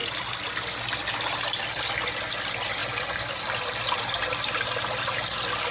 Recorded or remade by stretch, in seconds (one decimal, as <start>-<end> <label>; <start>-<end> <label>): 0.0-5.7 recorded

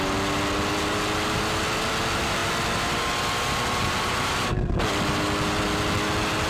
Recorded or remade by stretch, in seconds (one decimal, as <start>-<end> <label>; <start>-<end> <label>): 0.0-6.5 recorded

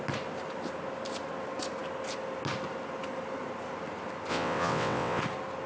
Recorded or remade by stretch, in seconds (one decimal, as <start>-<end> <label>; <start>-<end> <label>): 0.0-4.3 recorded; 4.3-5.2 remade; 5.2-5.7 recorded

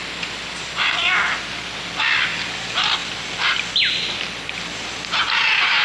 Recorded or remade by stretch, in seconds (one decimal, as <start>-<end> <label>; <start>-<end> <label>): 0.0-3.0 recorded; 3.0-3.7 remade; 3.7-5.8 recorded

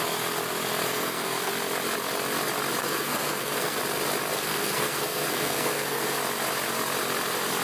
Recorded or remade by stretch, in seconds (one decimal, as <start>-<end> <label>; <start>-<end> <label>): 0.0-0.8 recorded; 0.8-1.5 remade; 1.5-2.8 recorded; 2.8-3.8 remade; 3.8-4.3 recorded; 4.3-6.2 remade; 6.2-7.6 recorded

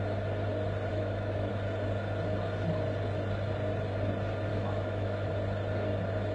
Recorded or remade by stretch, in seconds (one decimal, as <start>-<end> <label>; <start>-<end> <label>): 0.0-0.9 recorded; 0.9-1.5 remade; 1.5-4.5 recorded; 4.5-5.3 remade; 5.3-6.3 recorded

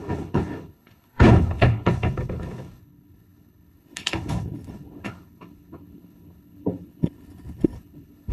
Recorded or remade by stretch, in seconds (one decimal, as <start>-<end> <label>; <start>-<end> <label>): 0.0-8.3 remade